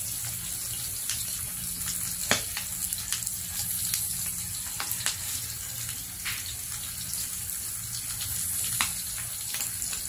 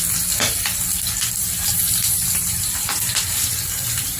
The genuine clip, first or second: first